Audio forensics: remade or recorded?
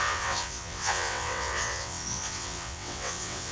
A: remade